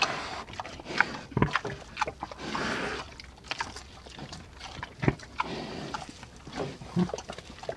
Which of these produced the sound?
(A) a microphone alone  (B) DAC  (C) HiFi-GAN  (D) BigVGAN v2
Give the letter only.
A